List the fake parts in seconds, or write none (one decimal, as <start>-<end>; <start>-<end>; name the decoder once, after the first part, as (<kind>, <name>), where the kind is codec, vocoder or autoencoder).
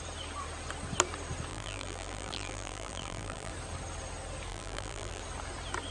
1.5-3.5 (vocoder, BigVGAN v2); 4.5-5.2